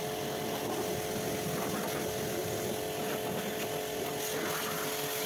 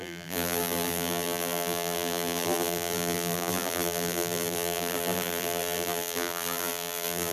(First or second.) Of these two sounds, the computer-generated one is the second